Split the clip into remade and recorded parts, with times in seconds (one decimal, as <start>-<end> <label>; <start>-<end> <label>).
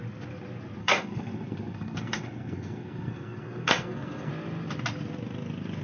0.0-0.8 recorded; 0.8-4.3 remade; 4.3-5.8 recorded